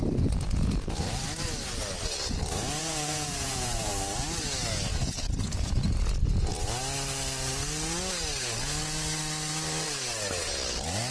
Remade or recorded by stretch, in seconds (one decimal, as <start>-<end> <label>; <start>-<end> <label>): 0.0-2.8 recorded; 2.8-3.9 remade; 3.9-4.9 recorded; 4.9-6.0 remade; 6.0-11.1 recorded